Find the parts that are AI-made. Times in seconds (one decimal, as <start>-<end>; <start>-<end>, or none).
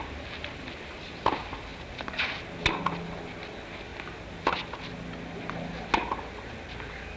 none